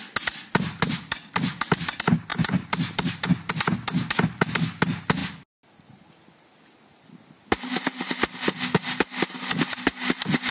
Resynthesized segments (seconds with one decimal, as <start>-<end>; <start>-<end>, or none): 2.3-3.6